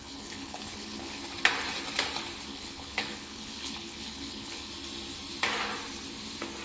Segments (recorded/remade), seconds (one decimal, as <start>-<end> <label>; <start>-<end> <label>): 0.0-1.2 remade; 1.2-2.5 recorded; 2.5-4.7 remade; 4.7-6.6 recorded